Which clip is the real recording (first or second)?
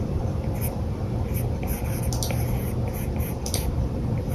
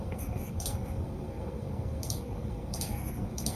first